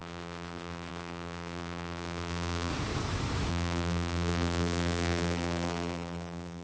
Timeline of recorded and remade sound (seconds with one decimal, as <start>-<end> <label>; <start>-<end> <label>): 0.0-2.7 remade; 2.7-3.5 recorded; 3.5-6.6 remade